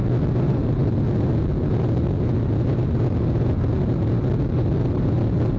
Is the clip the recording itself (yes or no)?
yes